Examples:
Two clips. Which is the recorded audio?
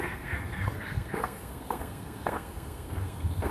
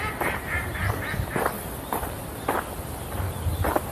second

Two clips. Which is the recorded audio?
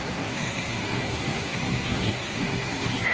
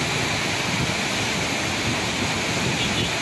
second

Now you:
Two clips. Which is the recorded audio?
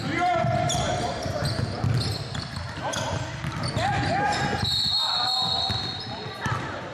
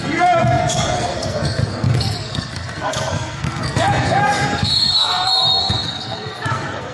first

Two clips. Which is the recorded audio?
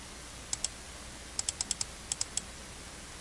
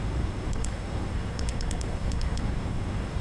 first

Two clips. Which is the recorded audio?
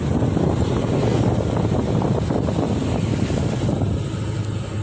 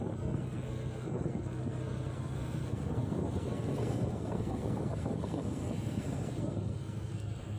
first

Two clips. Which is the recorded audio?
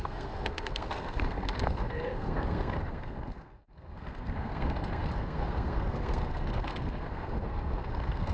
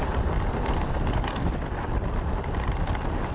second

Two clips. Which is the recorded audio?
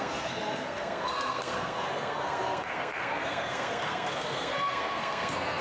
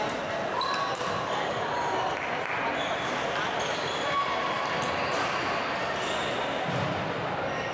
second